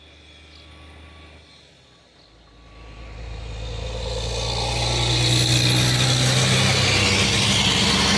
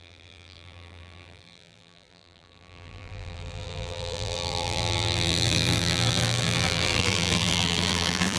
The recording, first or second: first